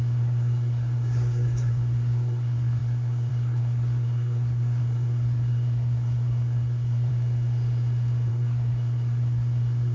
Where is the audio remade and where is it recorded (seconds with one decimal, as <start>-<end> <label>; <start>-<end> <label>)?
0.0-7.1 remade; 7.1-8.3 recorded; 8.3-9.9 remade